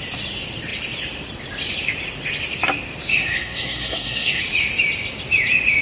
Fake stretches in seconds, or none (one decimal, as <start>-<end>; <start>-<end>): 3.1-4.4

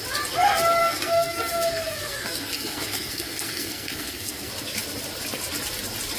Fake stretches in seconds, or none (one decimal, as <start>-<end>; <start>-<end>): 0.8-4.5

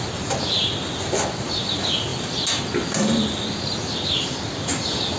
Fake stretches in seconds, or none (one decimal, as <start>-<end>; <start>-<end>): none